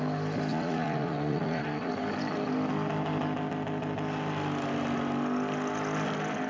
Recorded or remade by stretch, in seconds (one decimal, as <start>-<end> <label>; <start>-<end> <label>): 0.0-0.5 recorded; 0.5-1.9 remade; 1.9-6.5 recorded